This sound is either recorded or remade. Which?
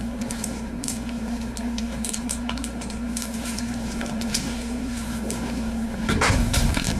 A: remade